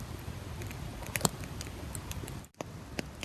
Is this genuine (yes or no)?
no